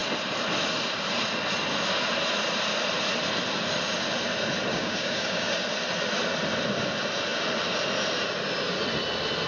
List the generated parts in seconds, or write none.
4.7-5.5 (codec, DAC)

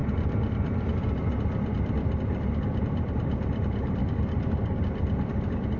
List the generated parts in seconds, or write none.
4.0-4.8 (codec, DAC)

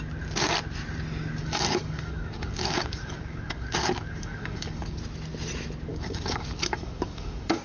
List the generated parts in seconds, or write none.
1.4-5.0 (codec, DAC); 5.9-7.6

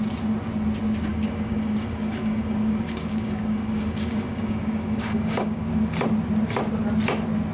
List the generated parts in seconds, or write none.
1.1-5.6 (codec, DAC)

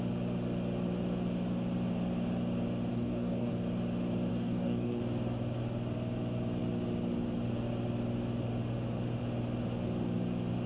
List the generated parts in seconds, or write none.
2.9-3.5 (codec, DAC); 4.3-5.0

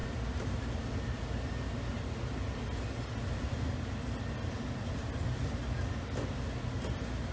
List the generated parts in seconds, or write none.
none

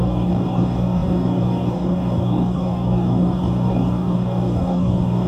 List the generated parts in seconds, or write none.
0.0-5.3 (codec, DAC)